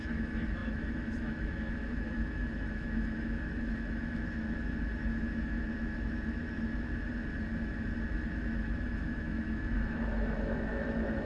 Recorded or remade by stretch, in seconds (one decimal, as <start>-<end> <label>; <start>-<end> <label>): 0.0-7.1 remade; 7.1-8.1 recorded; 8.1-11.3 remade